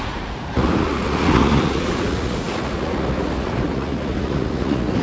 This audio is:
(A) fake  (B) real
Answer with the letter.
A